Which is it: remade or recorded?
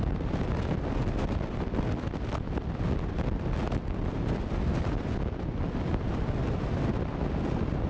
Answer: recorded